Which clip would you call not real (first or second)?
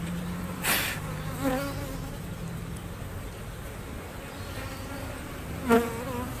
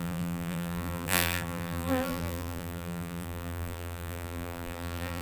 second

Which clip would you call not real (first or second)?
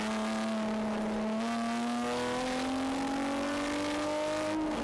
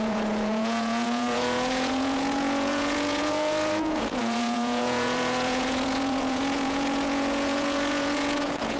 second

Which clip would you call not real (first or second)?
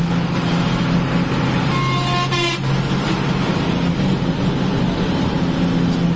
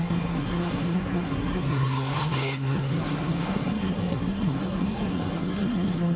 second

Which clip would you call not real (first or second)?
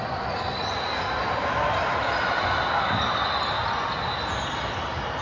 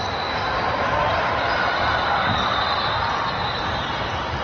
second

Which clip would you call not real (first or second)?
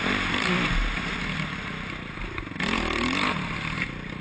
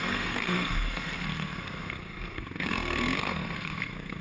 second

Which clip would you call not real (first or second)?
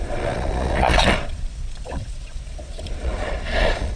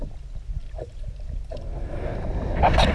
first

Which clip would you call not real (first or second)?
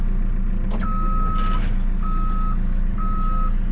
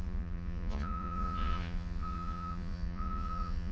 second